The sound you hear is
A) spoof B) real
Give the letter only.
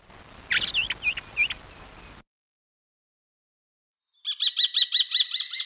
B